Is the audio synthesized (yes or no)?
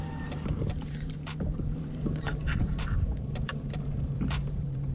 yes